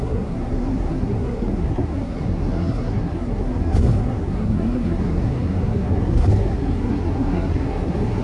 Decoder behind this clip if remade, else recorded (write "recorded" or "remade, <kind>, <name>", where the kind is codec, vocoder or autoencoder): remade, codec, SNAC